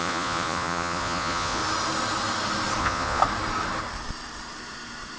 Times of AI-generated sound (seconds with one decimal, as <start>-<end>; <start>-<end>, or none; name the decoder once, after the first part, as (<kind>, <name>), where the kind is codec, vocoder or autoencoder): 0.0-1.6 (vocoder, Vocos); 2.8-3.2

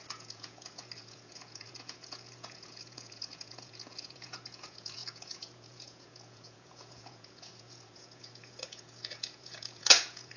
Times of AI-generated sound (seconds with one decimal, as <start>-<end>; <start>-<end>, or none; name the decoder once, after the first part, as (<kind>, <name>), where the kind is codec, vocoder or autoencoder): 0.0-10.4 (vocoder, Vocos)

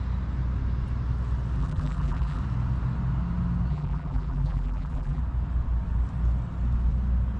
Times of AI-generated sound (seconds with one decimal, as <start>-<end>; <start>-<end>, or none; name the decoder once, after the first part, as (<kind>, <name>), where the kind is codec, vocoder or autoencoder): 1.6-2.4 (vocoder, BigVGAN v2); 3.7-5.2

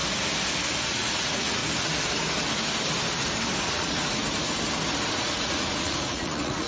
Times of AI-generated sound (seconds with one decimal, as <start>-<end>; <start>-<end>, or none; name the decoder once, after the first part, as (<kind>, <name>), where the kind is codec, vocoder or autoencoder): 0.8-1.6 (vocoder, Vocos); 3.7-4.2; 5.1-6.7

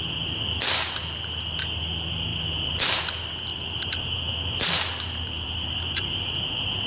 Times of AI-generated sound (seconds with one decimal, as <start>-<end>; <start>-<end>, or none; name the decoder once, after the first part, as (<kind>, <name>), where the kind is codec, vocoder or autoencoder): 2.3-3.0 (vocoder, BigVGAN v2); 3.5-6.9

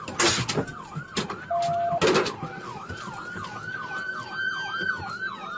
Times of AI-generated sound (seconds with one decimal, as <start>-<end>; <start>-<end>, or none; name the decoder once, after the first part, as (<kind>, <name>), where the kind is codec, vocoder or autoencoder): none